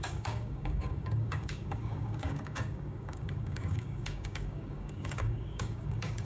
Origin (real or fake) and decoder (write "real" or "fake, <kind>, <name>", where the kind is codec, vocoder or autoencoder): fake, codec, DAC